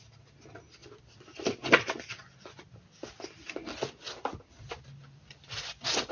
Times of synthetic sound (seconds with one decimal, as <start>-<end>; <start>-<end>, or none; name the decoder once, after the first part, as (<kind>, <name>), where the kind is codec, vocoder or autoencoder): none